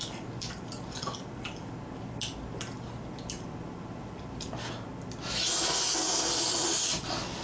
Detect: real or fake real